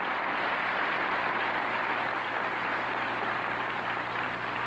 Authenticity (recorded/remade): recorded